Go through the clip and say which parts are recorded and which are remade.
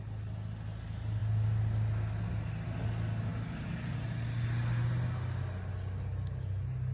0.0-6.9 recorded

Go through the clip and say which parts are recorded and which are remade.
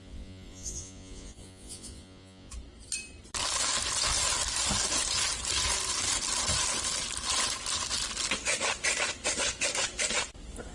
0.0-2.5 remade; 2.5-10.7 recorded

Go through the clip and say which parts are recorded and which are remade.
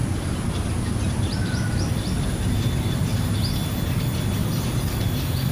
0.0-3.3 remade; 3.3-4.4 recorded; 4.4-5.5 remade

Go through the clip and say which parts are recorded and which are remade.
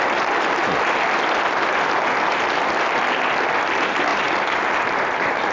0.0-5.5 recorded